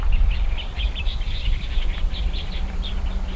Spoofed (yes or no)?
no